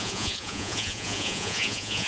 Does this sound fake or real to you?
fake